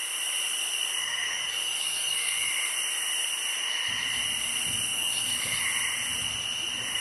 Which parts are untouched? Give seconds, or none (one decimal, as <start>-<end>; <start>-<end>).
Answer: 0.0-1.0; 2.5-4.9; 5.5-7.0